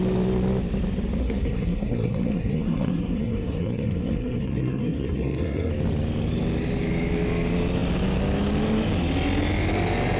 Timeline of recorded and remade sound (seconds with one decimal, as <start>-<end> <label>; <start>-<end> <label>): 0.0-1.2 recorded; 1.2-5.7 remade; 5.7-10.2 recorded

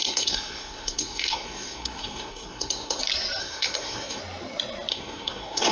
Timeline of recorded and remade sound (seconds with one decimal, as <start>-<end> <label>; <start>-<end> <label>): 0.0-3.0 remade; 3.0-3.4 recorded; 3.4-4.2 remade; 4.2-4.9 recorded; 4.9-5.7 remade